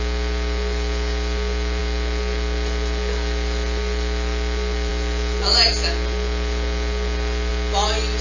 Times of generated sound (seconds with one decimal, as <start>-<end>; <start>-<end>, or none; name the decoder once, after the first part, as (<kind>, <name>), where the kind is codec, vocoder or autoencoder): none